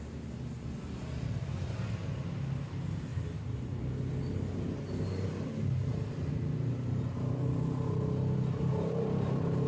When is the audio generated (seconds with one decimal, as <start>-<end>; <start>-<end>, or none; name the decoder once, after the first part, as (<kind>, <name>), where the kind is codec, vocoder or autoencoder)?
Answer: none